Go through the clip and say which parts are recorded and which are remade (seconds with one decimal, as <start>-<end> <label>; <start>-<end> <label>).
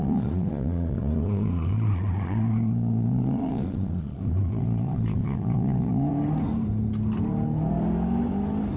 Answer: 0.0-6.1 remade; 6.1-8.8 recorded